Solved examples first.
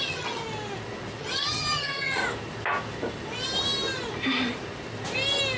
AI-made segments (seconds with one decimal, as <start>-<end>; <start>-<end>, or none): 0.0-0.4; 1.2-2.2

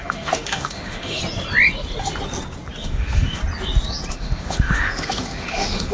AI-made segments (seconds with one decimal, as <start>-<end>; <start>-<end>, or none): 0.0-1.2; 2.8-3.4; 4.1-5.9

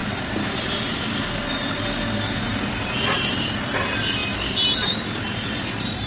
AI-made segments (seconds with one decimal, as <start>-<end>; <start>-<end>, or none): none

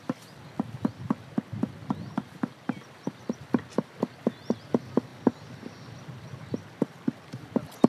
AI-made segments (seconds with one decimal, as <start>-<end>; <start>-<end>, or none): none